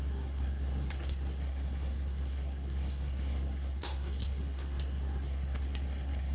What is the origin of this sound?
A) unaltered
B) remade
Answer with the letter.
B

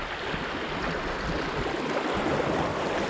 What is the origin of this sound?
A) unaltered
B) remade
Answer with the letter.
A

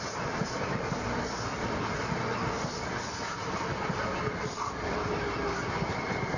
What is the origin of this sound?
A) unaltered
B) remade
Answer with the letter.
A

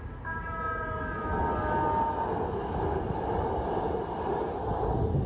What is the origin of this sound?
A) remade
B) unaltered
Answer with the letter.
B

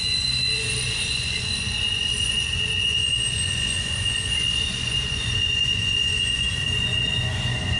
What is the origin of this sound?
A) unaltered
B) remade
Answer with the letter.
B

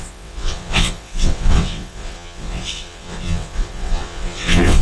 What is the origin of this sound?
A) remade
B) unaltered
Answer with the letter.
A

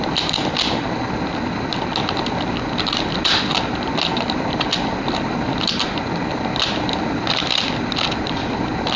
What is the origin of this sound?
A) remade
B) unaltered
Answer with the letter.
B